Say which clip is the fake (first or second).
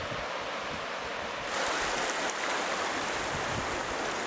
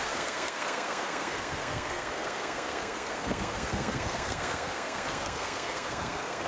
second